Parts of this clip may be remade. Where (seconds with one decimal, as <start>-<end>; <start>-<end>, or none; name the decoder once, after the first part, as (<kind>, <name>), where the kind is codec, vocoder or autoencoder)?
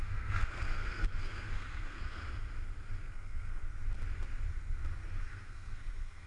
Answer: 0.0-2.2 (codec, SNAC); 3.0-3.6; 5.2-6.3